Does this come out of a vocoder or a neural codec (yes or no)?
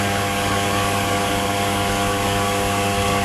yes